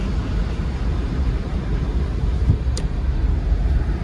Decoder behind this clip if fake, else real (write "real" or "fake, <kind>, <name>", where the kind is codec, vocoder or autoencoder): fake, vocoder, BigVGAN v2